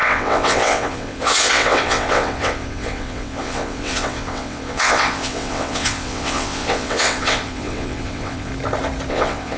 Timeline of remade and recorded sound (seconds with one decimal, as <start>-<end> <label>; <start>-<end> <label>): 0.0-8.5 remade; 8.5-9.1 recorded; 9.1-9.6 remade